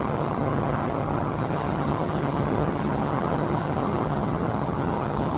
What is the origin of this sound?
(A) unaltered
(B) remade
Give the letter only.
B